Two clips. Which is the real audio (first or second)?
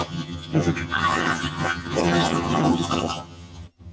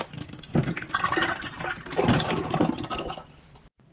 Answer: second